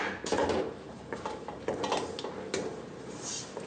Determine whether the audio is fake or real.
real